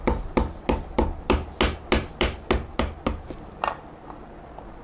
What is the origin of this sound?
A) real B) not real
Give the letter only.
A